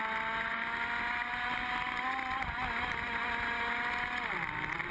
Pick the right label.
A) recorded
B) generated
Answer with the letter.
A